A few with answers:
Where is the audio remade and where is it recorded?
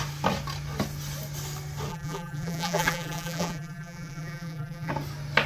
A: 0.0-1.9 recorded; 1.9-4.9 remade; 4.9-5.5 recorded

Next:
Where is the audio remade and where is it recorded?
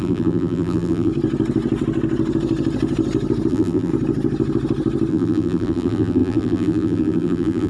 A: 0.0-1.1 remade; 1.1-3.5 recorded; 3.5-3.9 remade; 3.9-5.1 recorded; 5.1-7.7 remade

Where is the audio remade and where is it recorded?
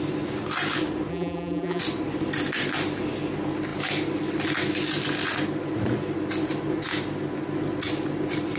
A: 0.0-1.1 recorded; 1.1-1.8 remade; 1.8-8.6 recorded